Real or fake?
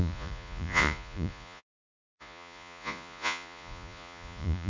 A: fake